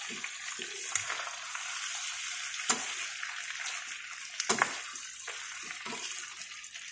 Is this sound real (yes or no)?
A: yes